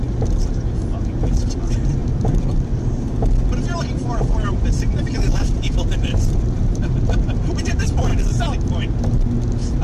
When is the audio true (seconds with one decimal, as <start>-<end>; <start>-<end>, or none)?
0.0-4.0; 7.4-9.8